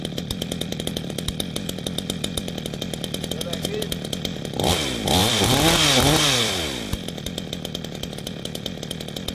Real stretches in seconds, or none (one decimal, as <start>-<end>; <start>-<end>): none